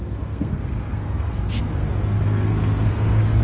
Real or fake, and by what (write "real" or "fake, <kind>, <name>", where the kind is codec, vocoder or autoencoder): fake, codec, SNAC